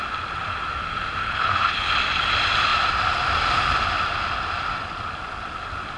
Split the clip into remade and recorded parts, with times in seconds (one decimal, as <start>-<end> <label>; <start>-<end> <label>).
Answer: 0.0-1.2 recorded; 1.2-1.9 remade; 1.9-6.0 recorded